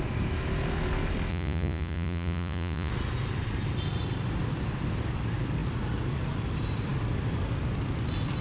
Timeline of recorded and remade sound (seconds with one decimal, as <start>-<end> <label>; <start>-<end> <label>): 0.0-1.3 recorded; 1.3-2.9 remade; 2.9-8.4 recorded